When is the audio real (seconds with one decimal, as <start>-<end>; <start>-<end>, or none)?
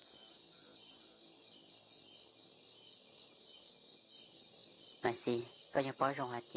1.7-3.0; 3.7-4.6; 5.4-6.6